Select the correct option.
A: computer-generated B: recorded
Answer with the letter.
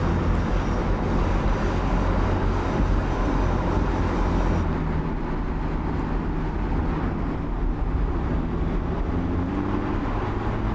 B